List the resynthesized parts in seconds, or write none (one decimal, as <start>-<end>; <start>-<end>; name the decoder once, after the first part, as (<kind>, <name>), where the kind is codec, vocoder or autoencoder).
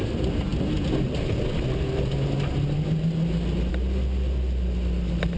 none